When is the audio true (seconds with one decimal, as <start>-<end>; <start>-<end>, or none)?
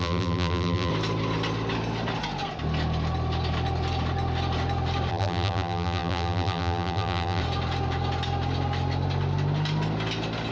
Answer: 0.9-5.1; 7.4-10.5